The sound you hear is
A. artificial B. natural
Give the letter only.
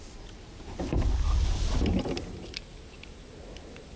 B